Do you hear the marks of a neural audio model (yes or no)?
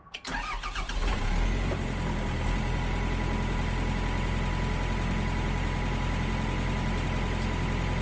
no